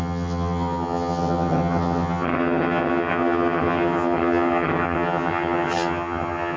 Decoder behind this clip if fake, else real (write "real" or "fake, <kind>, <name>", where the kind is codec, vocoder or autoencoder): fake, vocoder, HiFi-GAN